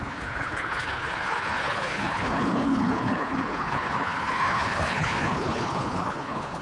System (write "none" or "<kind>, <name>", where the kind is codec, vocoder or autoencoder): codec, HILCodec